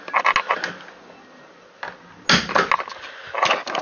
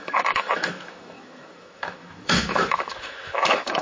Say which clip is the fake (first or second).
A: second